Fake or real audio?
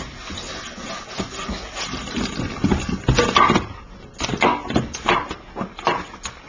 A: real